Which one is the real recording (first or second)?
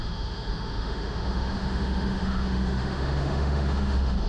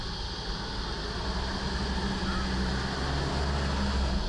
second